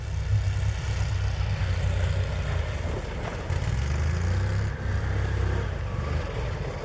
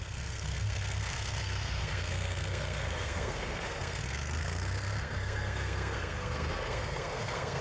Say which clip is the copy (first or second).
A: second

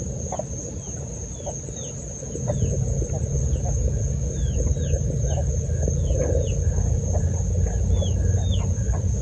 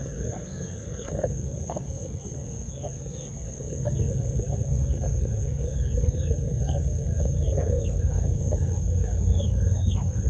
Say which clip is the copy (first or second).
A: second